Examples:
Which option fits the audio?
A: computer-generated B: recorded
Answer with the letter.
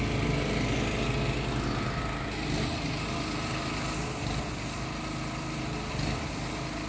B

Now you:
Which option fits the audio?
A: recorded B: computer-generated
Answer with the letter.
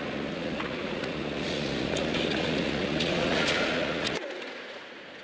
B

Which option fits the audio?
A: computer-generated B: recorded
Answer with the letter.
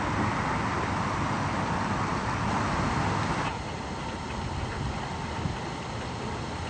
B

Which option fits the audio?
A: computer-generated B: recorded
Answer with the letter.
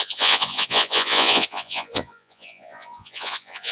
A